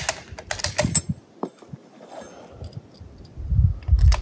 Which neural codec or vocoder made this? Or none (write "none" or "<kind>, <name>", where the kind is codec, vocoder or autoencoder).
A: none